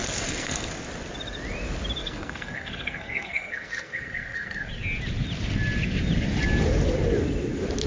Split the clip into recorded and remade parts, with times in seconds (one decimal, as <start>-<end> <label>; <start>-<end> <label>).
0.0-0.7 remade; 0.7-2.0 recorded; 2.0-4.7 remade; 4.7-7.9 recorded